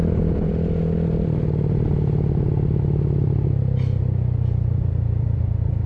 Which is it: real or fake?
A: real